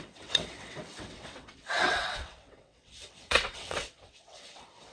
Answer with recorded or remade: remade